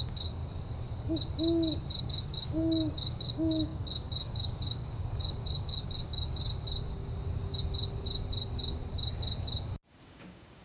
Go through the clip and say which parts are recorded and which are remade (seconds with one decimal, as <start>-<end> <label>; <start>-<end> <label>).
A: 0.0-0.4 remade; 0.4-2.0 recorded; 2.0-6.5 remade; 6.5-10.0 recorded; 10.0-10.6 remade